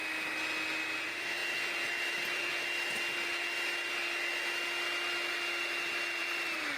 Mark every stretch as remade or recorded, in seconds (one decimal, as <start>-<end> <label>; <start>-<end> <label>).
0.0-6.8 recorded